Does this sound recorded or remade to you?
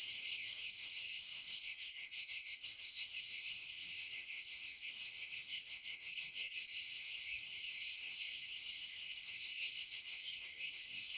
remade